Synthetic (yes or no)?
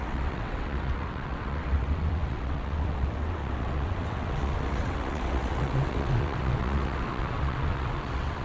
yes